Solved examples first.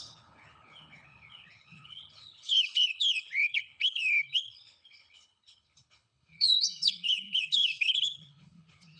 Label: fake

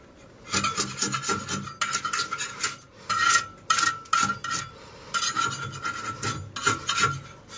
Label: real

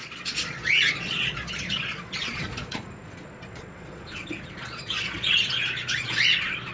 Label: fake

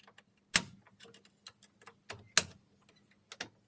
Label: real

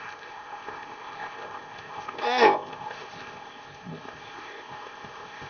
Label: fake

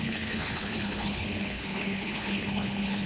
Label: fake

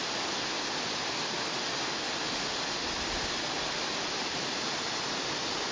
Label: real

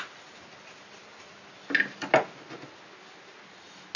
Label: real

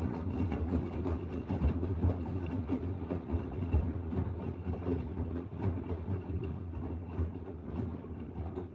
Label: fake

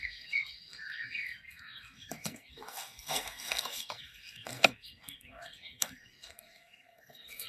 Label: fake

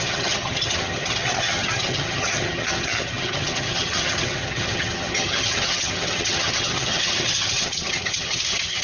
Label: fake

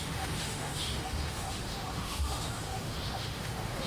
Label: fake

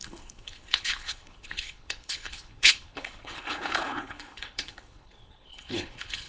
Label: fake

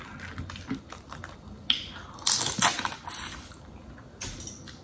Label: real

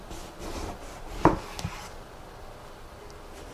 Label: real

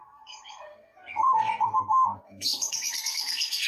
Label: fake